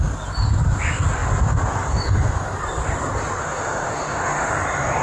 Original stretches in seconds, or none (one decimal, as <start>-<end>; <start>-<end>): 0.0-3.4; 4.5-5.0